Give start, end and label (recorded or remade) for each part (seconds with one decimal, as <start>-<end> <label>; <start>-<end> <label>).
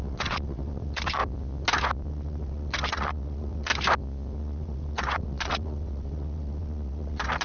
0.0-1.2 remade; 1.2-2.1 recorded; 2.1-3.7 remade; 3.7-4.4 recorded; 4.4-7.4 remade